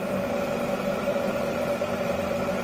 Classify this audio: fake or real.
fake